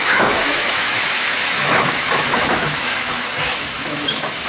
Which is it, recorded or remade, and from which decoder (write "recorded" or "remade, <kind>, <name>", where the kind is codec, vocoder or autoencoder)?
remade, autoencoder, DAC-VAE